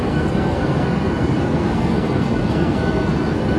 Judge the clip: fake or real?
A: fake